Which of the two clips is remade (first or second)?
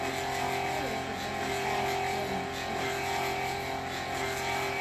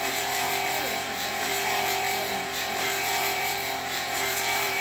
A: second